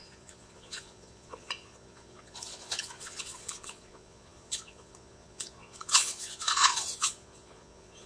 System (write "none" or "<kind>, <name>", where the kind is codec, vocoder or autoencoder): vocoder, Vocos